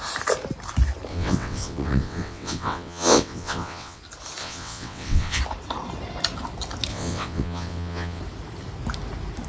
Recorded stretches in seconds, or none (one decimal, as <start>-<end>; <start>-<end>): 0.0-1.1; 4.0-4.4; 5.4-6.9; 8.2-9.5